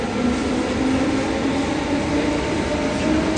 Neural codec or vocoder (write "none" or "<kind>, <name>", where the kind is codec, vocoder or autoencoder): none